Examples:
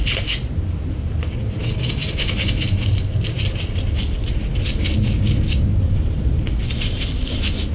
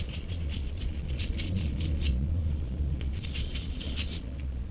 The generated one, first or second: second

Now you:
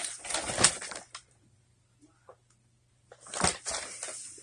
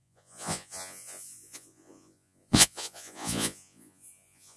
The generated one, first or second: second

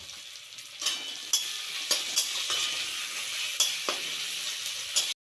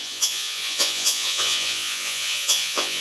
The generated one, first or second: second